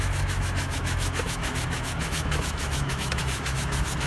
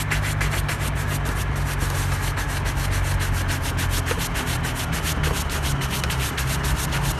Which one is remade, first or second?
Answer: first